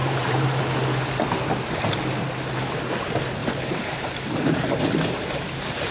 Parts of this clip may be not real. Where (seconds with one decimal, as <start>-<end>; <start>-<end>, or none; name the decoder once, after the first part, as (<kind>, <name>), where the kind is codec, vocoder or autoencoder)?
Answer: 0.0-0.6 (vocoder, BigVGAN v2); 3.4-5.9